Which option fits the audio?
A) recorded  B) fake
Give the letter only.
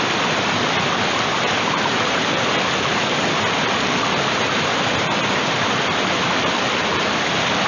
A